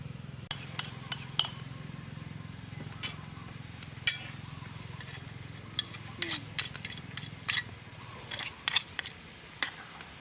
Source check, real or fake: real